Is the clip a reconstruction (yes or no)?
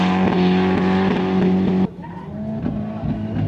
no